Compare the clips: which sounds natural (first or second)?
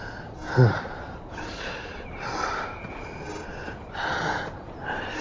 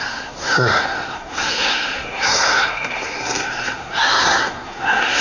first